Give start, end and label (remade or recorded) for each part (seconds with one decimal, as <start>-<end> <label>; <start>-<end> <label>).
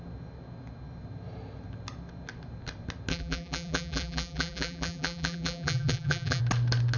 0.0-3.1 recorded; 3.1-6.4 remade; 6.4-7.0 recorded